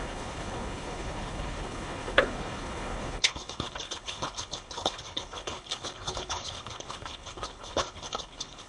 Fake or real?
fake